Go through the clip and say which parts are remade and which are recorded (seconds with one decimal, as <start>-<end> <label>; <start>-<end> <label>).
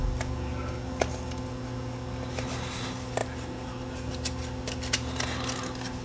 0.0-6.0 recorded